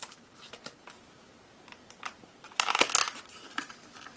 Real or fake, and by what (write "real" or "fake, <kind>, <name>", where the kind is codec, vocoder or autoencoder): real